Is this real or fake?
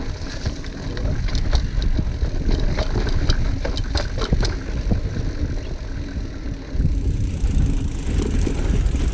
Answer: real